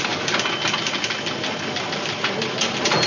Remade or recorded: recorded